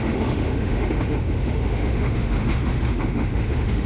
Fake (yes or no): yes